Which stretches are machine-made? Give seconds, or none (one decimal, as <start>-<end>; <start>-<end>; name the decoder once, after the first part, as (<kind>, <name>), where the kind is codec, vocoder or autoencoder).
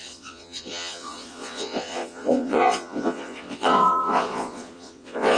0.0-5.4 (vocoder, Vocos)